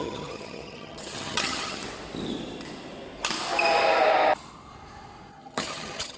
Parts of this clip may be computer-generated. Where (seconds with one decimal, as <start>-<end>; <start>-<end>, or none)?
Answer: 0.0-1.8; 5.3-6.2